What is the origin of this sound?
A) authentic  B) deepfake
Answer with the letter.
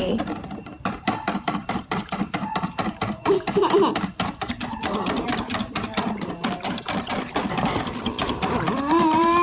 B